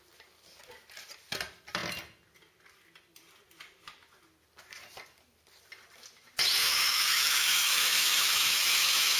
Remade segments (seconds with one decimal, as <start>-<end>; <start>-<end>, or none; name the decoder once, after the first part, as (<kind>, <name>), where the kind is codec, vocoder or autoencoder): 6.6-9.2 (autoencoder, DAC-VAE)